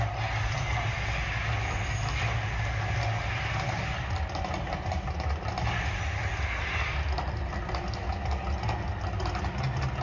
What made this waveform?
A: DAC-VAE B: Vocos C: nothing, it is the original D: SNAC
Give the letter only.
C